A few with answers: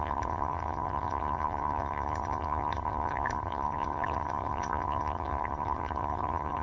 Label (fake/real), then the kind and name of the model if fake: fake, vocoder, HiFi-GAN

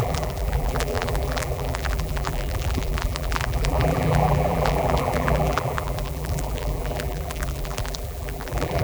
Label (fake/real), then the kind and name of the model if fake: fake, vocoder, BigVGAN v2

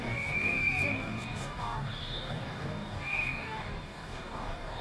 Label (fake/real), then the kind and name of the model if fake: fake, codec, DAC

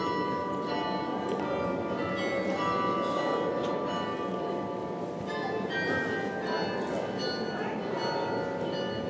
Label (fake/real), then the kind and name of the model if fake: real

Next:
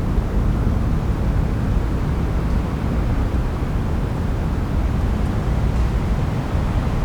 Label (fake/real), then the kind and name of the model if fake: real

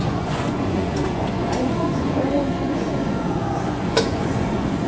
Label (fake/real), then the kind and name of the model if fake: fake, vocoder, Vocos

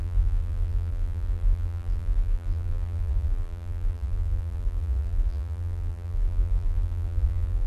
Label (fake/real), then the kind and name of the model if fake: fake, vocoder, BigVGAN v2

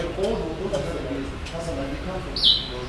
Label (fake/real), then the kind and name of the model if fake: real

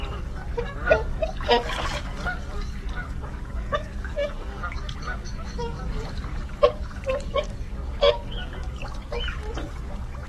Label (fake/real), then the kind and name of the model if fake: fake, codec, DAC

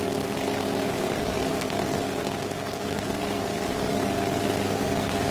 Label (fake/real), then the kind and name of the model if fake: fake, codec, SNAC